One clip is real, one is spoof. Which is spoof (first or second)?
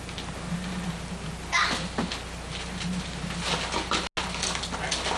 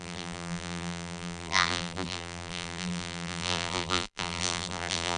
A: second